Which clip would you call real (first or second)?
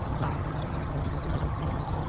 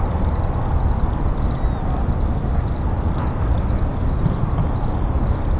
second